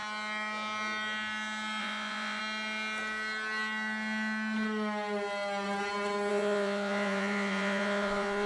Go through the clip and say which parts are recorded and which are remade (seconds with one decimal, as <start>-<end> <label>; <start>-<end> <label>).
0.0-1.8 recorded; 1.8-2.4 remade; 2.4-6.3 recorded; 6.3-8.5 remade